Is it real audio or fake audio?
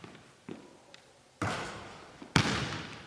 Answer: fake